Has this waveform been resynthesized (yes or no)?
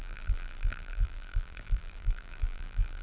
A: yes